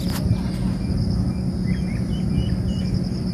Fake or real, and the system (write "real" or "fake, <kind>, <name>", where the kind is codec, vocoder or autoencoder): real